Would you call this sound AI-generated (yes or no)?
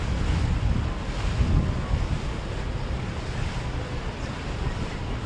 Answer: no